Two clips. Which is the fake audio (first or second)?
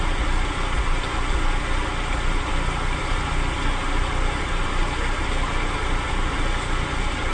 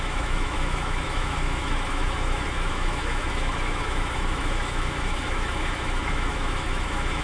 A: second